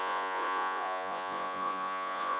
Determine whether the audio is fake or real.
fake